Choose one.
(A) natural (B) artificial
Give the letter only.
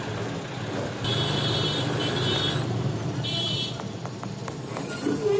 A